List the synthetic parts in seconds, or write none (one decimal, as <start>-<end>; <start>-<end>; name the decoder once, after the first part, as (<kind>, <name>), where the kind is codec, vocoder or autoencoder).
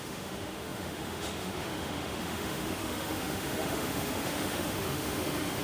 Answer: 0.0-5.6 (autoencoder, DAC-VAE)